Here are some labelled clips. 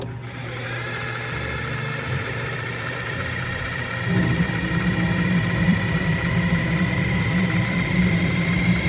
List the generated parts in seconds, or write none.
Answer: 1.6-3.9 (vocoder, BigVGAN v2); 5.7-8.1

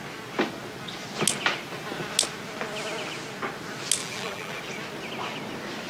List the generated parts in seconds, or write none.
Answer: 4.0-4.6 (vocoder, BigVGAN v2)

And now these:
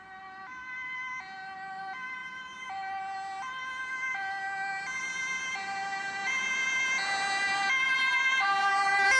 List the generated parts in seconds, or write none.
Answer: none

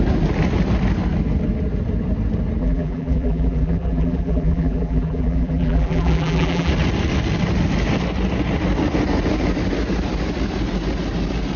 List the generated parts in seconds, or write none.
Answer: 2.6-6.7 (vocoder, BigVGAN v2)

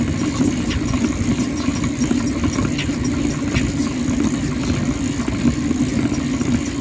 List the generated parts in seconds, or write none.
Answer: none